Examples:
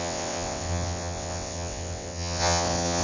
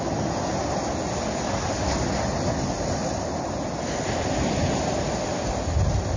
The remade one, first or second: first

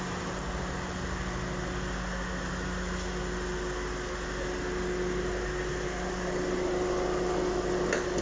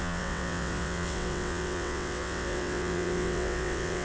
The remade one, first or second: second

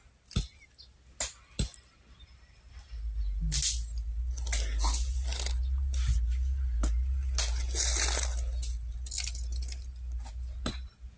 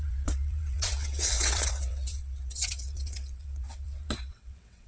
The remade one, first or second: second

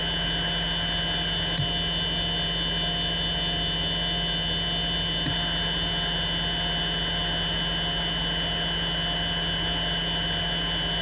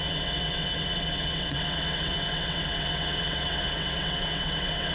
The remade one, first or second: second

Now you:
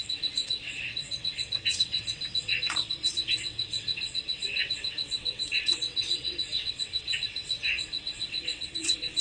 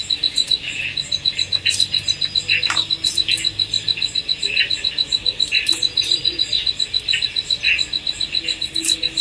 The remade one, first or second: first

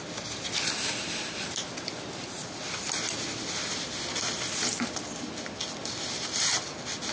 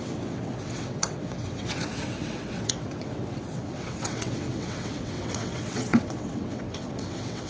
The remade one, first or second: second